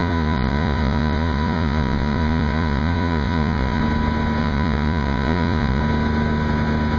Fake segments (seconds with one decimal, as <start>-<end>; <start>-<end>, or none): 0.0-3.8; 4.4-5.8